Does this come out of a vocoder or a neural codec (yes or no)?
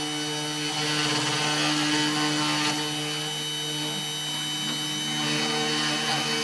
no